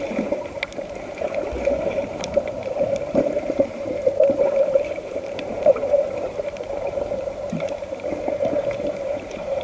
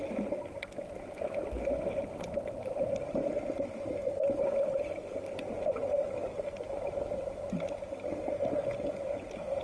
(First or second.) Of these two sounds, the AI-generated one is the first